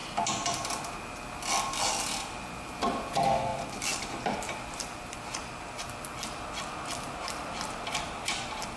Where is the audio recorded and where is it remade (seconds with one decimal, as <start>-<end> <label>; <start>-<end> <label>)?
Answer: 0.0-3.5 recorded; 3.5-8.8 remade